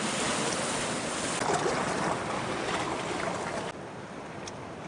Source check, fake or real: real